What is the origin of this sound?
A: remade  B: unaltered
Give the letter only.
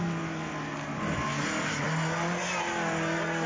B